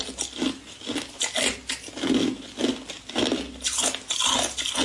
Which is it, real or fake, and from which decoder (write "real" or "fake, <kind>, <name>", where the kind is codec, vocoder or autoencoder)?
real